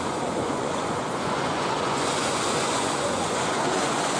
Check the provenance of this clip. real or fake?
fake